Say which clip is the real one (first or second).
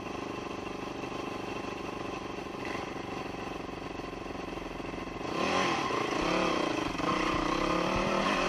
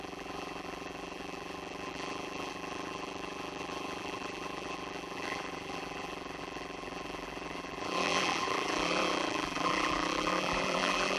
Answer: first